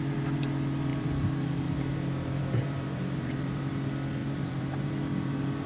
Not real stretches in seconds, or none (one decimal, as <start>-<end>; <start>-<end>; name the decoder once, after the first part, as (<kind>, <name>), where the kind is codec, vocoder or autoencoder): 0.9-3.6 (vocoder, BigVGAN v2); 4.2-4.9